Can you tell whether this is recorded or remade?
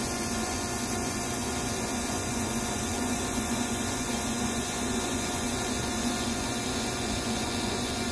remade